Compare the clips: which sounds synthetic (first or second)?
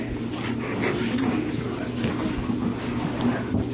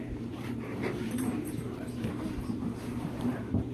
second